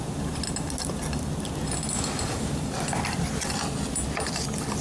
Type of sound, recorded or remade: recorded